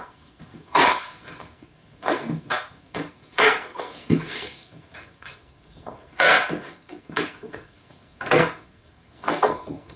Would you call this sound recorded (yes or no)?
no